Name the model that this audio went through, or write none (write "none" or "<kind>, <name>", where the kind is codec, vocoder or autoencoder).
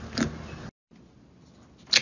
none